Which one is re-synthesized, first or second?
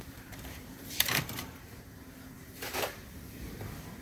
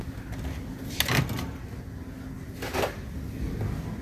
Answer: first